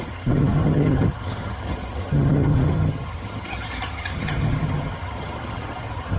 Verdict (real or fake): fake